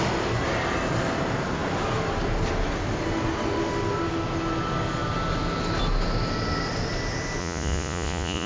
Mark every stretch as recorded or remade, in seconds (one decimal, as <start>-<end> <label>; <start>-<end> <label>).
0.0-7.4 recorded; 7.4-8.5 remade